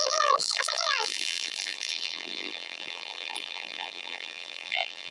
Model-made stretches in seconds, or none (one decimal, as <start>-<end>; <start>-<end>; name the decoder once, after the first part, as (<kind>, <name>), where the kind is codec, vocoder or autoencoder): 0.0-5.1 (vocoder, BigVGAN v2)